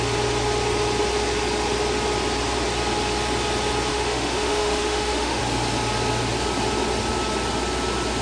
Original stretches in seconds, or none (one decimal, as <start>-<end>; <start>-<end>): 0.0-3.9; 5.4-8.2